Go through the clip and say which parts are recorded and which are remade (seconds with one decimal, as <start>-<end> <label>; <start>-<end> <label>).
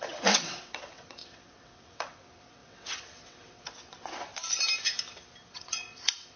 0.0-4.3 remade; 4.3-5.5 recorded; 5.5-6.4 remade